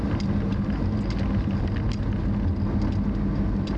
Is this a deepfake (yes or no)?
no